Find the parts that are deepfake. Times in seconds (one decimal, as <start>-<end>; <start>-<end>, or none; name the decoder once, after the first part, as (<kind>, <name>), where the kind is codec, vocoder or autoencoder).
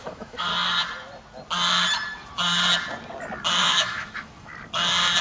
0.0-0.5 (autoencoder, DAC-VAE); 3.6-4.5